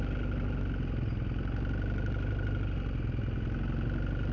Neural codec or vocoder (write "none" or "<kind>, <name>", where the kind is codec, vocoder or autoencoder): none